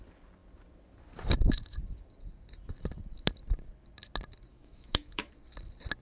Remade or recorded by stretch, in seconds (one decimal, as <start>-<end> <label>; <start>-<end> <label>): 0.0-4.5 recorded; 4.5-5.3 remade; 5.3-6.0 recorded